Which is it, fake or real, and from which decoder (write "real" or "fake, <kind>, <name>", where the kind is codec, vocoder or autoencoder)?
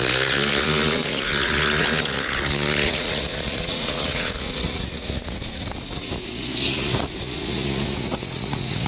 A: fake, vocoder, Vocos